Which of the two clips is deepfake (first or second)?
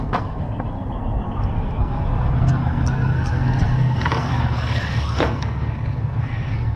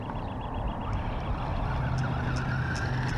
first